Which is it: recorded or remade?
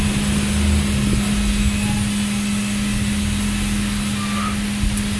recorded